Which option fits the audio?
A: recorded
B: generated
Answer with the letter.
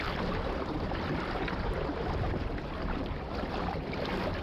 B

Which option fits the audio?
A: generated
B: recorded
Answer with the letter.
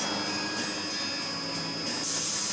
B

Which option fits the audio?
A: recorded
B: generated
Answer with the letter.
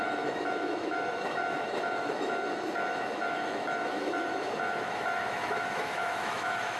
B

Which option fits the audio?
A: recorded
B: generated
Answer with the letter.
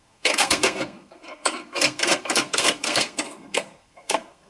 B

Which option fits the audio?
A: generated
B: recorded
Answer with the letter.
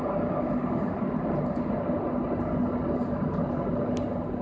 B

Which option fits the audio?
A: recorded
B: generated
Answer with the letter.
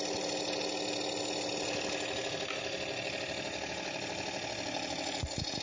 A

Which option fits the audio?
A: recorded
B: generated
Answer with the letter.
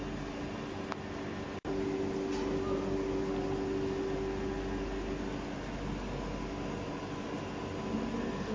A